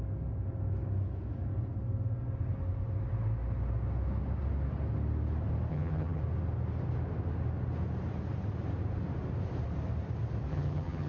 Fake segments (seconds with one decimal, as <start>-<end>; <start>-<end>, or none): 5.7-6.2; 10.5-11.1